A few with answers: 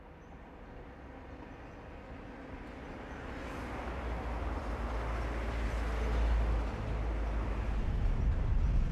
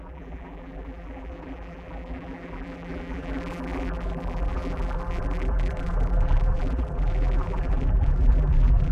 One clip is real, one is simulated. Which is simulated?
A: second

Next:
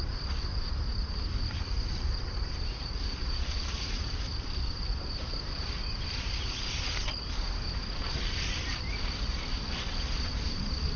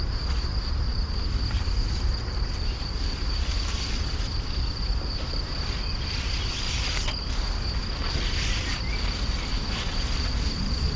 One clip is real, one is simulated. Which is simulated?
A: first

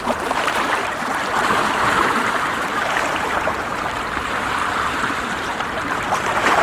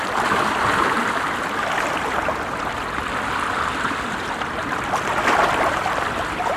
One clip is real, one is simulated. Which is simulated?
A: first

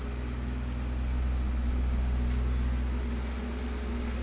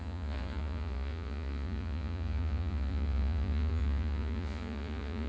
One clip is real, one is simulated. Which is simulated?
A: second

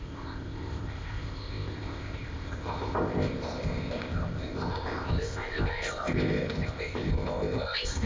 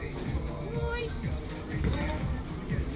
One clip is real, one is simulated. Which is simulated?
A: first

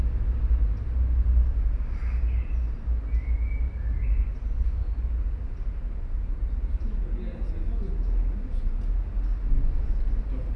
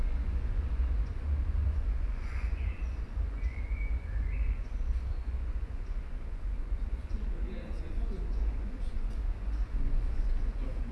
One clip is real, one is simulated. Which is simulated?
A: second